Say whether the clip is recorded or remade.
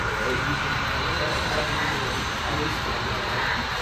remade